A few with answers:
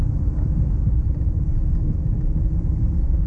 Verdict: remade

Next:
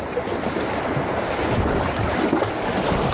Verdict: recorded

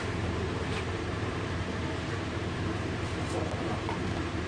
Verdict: remade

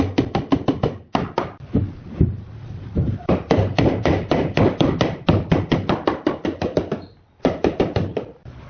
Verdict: recorded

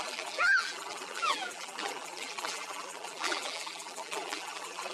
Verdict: remade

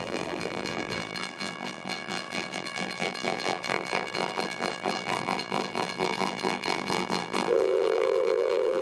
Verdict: remade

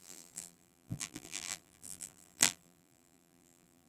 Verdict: remade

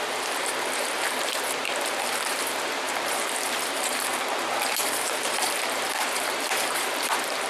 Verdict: remade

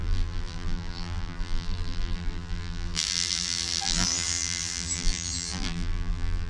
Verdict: remade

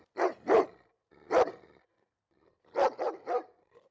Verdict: remade